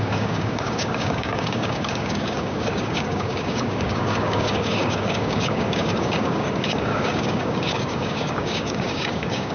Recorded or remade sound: remade